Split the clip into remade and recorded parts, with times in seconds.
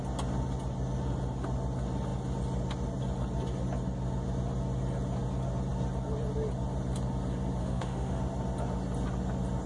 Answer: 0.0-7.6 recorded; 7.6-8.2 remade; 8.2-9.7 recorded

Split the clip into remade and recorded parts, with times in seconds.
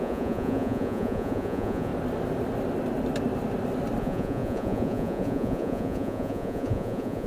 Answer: 0.0-1.9 remade; 1.9-4.0 recorded; 4.0-7.3 remade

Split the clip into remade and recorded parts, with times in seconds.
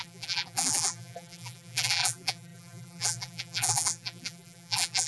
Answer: 0.0-5.1 remade